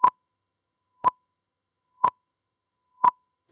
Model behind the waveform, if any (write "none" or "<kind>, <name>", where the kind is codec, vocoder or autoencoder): vocoder, HiFi-GAN